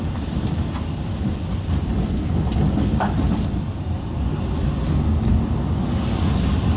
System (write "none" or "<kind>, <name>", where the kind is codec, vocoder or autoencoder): none